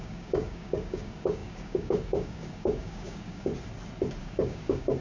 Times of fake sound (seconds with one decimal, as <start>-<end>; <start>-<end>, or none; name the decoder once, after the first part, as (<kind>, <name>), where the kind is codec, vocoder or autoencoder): 0.0-3.5 (codec, DAC); 4.2-5.0